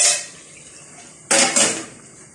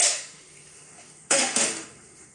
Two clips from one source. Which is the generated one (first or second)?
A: second